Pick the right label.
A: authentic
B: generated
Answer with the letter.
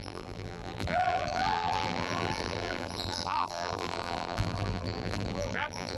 B